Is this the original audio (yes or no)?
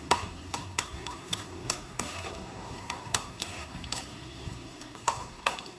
no